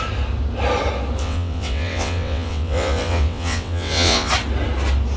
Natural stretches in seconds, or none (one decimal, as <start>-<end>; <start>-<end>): 0.0-1.2; 4.3-5.2